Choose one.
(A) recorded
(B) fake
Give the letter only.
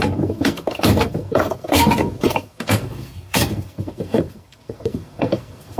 B